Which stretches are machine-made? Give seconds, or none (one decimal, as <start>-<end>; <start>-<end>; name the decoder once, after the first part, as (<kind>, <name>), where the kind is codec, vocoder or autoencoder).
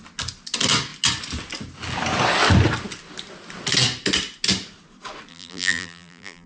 5.3-6.5 (vocoder, BigVGAN v2)